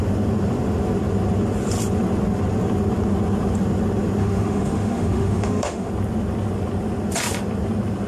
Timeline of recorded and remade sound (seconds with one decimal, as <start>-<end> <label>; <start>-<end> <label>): 0.0-4.2 recorded; 4.2-5.9 remade; 5.9-8.1 recorded